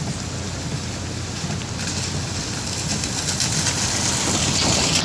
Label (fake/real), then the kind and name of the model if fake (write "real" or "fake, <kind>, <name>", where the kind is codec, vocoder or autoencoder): real